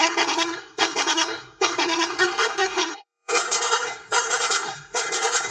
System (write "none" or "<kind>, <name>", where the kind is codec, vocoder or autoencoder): codec, SNAC